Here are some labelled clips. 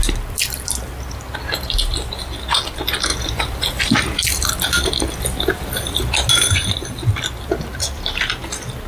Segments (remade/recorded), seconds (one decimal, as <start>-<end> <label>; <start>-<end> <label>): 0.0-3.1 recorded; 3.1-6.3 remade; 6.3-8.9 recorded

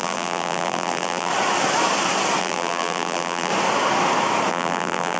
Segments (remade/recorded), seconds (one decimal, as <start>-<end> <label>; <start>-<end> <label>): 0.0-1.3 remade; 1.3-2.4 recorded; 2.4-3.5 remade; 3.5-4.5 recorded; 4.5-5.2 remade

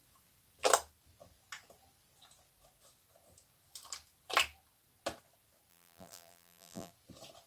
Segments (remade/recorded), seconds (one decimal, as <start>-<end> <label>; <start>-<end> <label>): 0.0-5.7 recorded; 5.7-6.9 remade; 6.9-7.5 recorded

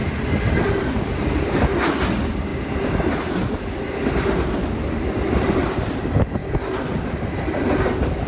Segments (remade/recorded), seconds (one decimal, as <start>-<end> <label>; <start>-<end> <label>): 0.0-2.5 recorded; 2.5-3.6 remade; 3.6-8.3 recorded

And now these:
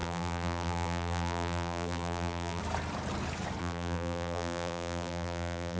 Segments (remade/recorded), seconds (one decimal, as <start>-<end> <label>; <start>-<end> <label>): 0.0-2.6 remade; 2.6-3.6 recorded; 3.6-5.8 remade